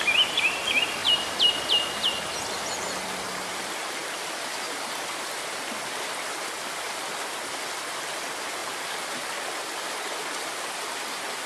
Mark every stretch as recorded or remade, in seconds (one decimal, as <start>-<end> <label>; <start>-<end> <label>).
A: 0.0-11.5 recorded